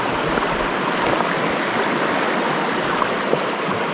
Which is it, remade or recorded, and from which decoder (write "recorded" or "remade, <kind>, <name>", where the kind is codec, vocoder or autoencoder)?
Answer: recorded